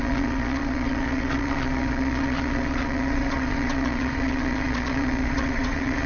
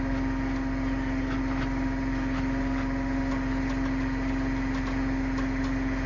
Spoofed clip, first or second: first